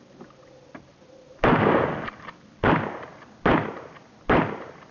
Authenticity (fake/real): real